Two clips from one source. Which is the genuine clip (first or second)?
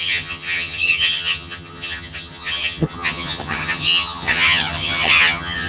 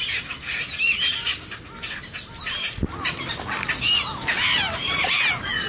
second